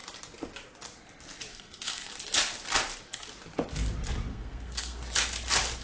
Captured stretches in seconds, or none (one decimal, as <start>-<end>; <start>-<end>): 0.0-1.5; 2.1-4.3; 5.0-5.8